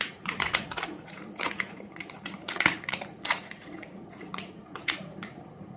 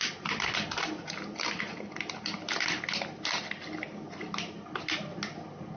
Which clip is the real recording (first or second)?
second